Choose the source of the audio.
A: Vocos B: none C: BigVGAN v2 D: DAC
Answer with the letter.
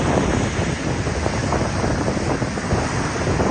B